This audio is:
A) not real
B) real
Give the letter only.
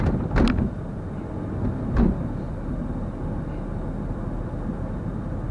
B